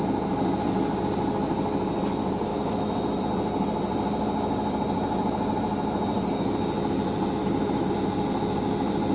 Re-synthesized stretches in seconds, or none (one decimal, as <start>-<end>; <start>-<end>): 2.5-3.2; 7.4-7.9